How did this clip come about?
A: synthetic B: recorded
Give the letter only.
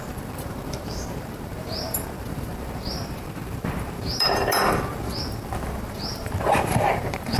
A